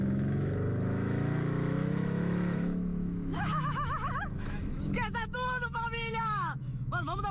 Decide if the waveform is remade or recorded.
remade